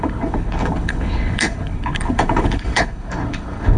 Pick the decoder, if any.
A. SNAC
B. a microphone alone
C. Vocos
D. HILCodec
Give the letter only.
D